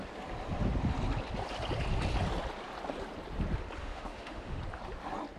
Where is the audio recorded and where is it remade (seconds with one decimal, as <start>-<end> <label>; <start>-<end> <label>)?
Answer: 0.0-3.8 recorded; 3.8-4.6 remade; 4.6-5.4 recorded